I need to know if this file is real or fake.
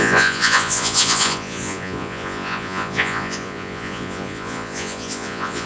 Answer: fake